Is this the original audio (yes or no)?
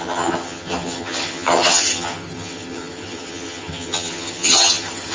no